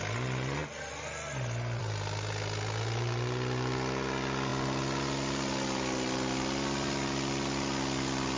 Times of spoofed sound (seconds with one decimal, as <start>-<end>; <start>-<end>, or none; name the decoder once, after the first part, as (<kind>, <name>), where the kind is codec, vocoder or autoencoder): none